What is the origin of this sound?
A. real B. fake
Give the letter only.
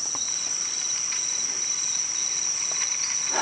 A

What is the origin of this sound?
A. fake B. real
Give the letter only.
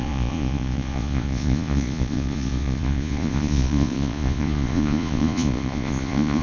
A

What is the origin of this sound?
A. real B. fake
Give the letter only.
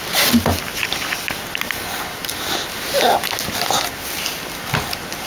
A